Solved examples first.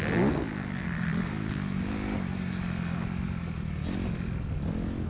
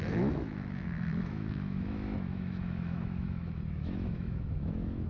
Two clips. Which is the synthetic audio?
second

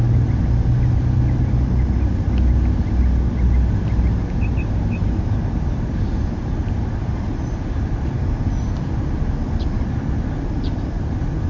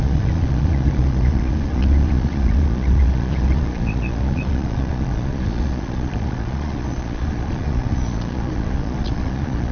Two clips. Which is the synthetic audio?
second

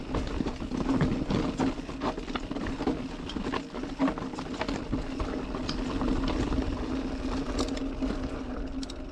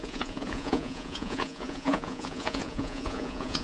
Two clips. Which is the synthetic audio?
second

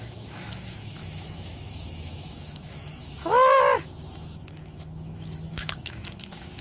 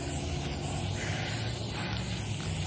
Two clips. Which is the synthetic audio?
first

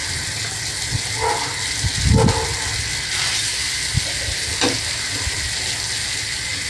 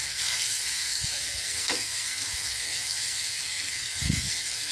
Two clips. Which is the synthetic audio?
second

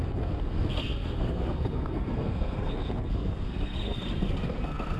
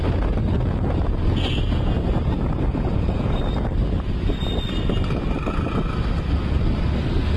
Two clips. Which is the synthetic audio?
first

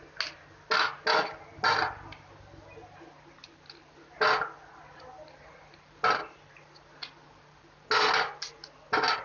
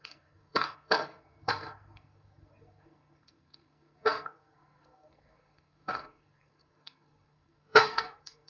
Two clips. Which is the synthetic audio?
second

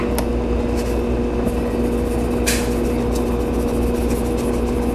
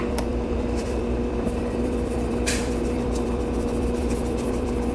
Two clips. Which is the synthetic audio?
second